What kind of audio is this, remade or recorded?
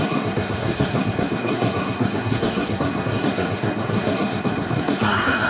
remade